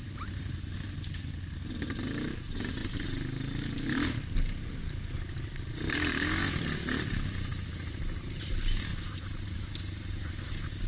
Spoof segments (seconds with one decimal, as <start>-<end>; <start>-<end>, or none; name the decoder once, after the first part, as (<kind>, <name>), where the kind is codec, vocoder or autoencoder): none